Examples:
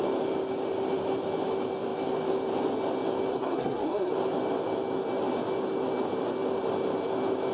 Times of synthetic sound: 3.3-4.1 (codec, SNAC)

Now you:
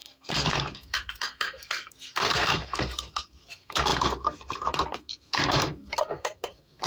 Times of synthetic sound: 0.0-6.9 (codec, SNAC)

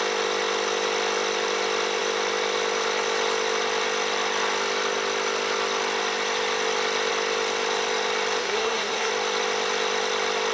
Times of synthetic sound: 8.4-9.1 (codec, SNAC)

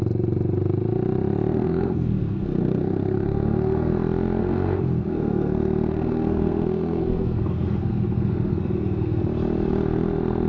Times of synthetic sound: 1.5-3.9 (codec, SNAC); 4.4-9.2

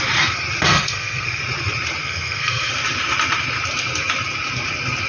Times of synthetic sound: 0.7-1.4 (codec, SNAC); 2.0-2.7

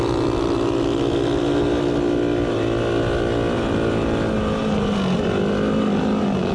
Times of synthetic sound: none

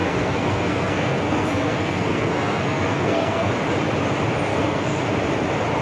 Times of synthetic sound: 0.0-3.5 (codec, SNAC); 4.5-5.0

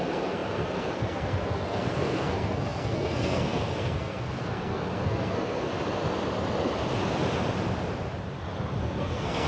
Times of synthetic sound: 0.0-5.7 (codec, SNAC); 8.8-9.5